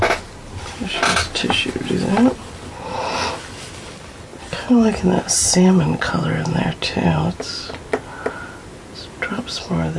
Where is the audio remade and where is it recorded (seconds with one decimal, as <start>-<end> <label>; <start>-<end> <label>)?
0.0-4.3 recorded; 4.3-6.6 remade; 6.6-10.0 recorded

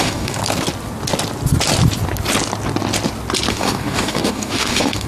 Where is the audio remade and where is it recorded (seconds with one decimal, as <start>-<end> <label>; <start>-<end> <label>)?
0.0-0.4 remade; 0.4-3.5 recorded; 3.5-5.1 remade